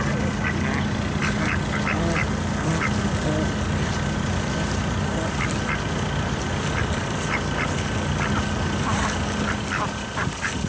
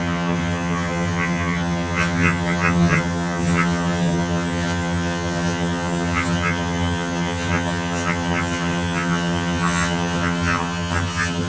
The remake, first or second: second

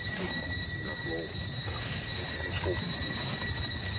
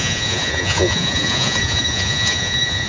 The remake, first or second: second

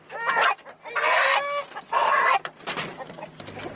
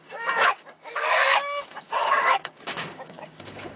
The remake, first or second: second